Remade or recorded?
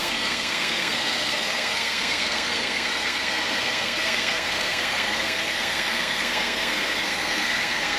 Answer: remade